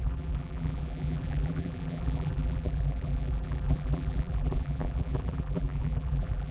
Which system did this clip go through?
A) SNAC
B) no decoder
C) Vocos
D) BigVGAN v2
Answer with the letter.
D